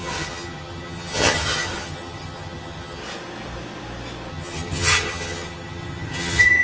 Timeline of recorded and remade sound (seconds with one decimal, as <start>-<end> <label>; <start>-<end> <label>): 0.0-3.0 remade; 3.0-4.3 recorded; 4.3-6.6 remade

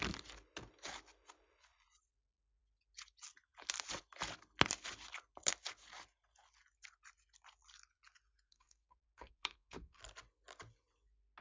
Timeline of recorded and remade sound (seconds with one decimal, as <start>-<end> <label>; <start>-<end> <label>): 0.0-8.5 recorded; 8.5-10.0 remade; 10.0-11.4 recorded

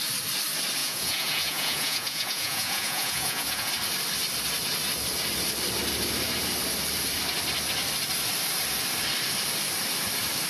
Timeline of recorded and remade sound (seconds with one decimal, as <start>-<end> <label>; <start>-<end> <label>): 0.0-0.8 recorded; 0.8-3.7 remade; 3.7-10.5 recorded

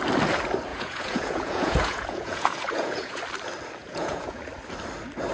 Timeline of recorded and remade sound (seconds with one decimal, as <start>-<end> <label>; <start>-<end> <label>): 0.0-0.7 recorded; 0.7-3.2 remade; 3.2-3.8 recorded; 3.8-4.4 remade; 4.4-5.3 recorded

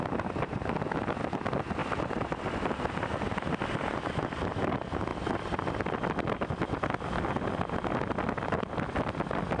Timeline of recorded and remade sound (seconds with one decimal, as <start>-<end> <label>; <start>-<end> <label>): 0.0-1.8 recorded; 1.8-4.1 remade; 4.1-5.1 recorded; 5.1-5.7 remade; 5.7-9.6 recorded